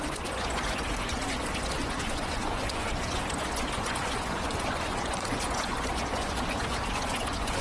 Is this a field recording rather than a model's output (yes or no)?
no